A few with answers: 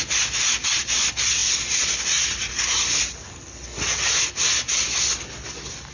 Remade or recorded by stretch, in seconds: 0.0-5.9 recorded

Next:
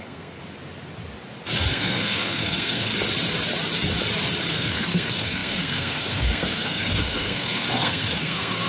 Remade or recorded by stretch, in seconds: 0.0-0.4 remade; 0.4-1.7 recorded; 1.7-2.9 remade; 2.9-4.5 recorded; 4.5-8.7 remade